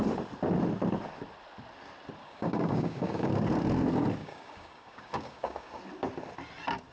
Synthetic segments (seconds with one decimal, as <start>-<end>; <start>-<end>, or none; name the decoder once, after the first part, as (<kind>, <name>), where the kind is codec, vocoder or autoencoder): 2.2-3.3 (codec, DAC); 4.2-5.8